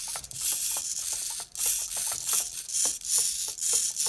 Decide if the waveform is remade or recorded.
recorded